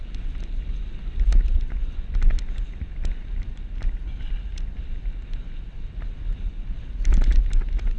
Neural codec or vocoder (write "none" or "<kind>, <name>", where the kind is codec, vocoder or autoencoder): none